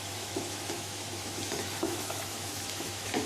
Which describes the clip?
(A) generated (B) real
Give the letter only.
A